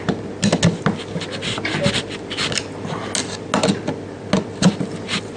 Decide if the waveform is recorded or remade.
recorded